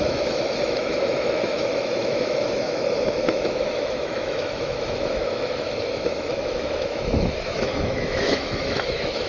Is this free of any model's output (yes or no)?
no